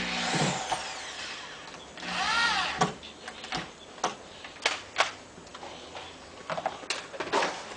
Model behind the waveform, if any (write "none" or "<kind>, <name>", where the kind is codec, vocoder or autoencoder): none